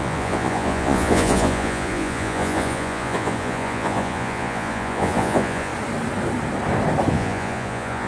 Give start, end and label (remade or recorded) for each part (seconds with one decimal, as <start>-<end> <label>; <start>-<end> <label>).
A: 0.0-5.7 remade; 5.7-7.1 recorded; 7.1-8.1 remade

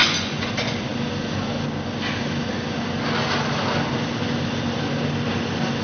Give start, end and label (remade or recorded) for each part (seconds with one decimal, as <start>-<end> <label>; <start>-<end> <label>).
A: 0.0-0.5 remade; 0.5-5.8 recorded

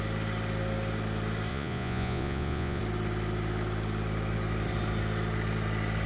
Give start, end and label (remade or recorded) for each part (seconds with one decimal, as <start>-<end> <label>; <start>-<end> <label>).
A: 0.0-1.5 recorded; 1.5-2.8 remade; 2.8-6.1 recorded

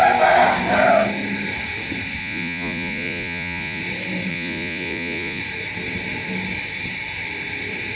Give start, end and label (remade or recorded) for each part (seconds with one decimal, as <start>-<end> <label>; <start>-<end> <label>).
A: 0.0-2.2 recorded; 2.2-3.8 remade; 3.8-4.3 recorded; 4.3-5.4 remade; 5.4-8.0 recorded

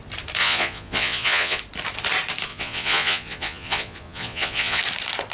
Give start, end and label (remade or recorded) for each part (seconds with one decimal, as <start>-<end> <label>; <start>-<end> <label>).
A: 0.0-0.4 recorded; 0.4-1.6 remade; 1.6-2.5 recorded; 2.5-4.8 remade; 4.8-5.3 recorded

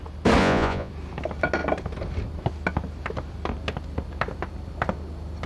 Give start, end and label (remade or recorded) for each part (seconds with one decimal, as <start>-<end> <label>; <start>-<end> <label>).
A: 0.0-0.4 recorded; 0.4-0.9 remade; 0.9-5.5 recorded

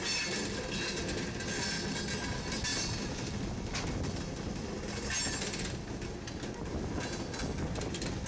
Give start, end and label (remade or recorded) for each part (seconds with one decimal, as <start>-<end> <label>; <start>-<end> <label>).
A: 0.0-8.3 recorded

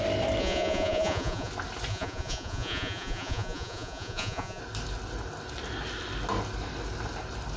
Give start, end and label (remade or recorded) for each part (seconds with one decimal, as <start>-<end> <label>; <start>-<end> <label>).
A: 0.0-0.4 recorded; 0.4-1.5 remade; 1.5-1.9 recorded; 1.9-4.6 remade; 4.6-7.6 recorded